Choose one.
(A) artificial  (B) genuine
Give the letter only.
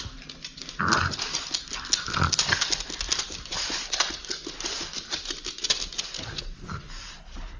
B